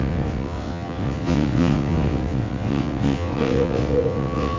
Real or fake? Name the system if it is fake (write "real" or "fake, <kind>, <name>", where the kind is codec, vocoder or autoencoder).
fake, vocoder, WaveNeXt